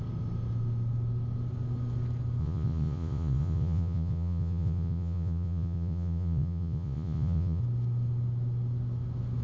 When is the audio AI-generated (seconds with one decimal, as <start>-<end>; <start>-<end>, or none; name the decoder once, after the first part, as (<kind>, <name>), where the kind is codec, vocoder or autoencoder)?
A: 2.4-7.6 (vocoder, Vocos)